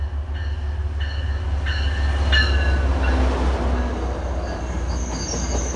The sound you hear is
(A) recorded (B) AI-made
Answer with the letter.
A